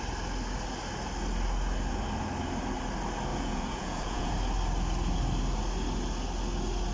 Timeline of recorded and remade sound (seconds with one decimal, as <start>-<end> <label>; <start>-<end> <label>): 0.0-3.3 recorded; 3.3-4.3 remade; 4.3-6.9 recorded

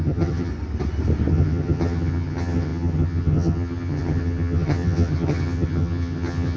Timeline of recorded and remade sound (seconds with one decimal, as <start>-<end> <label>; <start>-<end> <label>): 0.0-0.5 remade; 0.5-1.3 recorded; 1.3-6.6 remade

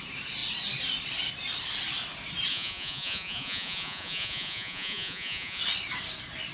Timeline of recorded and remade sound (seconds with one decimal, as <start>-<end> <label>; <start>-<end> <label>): 0.0-2.5 recorded; 2.5-5.6 remade; 5.6-6.5 recorded

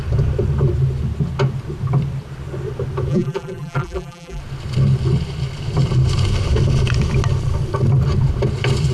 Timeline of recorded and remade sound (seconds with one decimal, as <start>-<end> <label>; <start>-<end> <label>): 0.0-3.1 recorded; 3.1-4.4 remade; 4.4-8.9 recorded

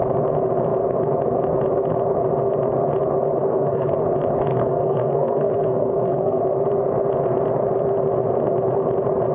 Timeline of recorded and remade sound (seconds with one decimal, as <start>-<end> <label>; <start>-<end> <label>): 0.0-3.4 recorded; 3.4-3.9 remade; 3.9-4.5 recorded; 4.5-6.4 remade; 6.4-9.3 recorded